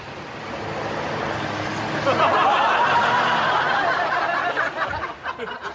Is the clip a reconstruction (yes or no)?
no